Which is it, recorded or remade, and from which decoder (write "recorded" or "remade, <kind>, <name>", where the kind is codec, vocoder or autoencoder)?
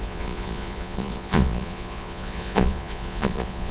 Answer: remade, vocoder, Vocos